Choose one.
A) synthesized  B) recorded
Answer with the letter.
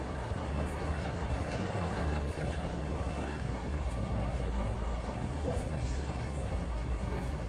A